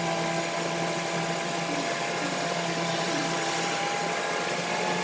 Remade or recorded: remade